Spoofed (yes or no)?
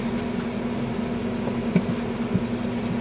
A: no